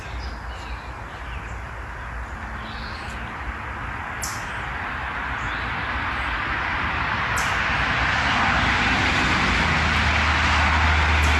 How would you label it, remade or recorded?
recorded